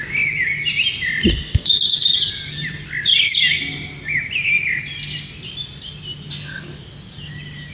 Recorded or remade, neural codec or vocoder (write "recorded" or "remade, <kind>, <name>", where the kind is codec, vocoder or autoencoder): recorded